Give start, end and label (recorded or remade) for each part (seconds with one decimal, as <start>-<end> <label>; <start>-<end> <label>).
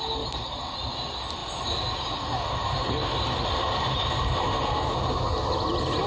0.0-6.1 recorded